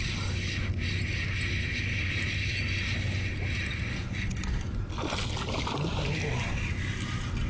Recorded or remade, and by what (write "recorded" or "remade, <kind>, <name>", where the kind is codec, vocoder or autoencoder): recorded